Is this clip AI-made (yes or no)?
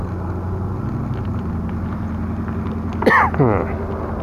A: no